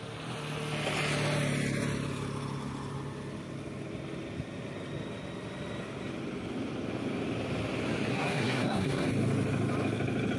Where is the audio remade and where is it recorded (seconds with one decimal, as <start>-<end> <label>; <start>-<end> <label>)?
0.0-8.1 recorded; 8.1-9.1 remade; 9.1-10.4 recorded